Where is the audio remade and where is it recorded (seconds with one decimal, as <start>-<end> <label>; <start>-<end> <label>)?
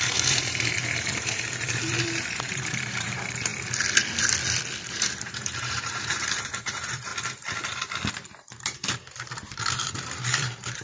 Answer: 0.0-3.5 remade; 3.5-4.9 recorded; 4.9-7.1 remade; 7.1-8.1 recorded; 8.1-10.8 remade